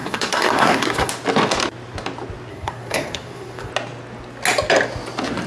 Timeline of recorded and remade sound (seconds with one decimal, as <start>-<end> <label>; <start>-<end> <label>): 0.0-1.1 remade; 1.1-2.5 recorded; 2.5-3.7 remade; 3.7-5.5 recorded